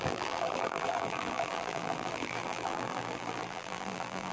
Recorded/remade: remade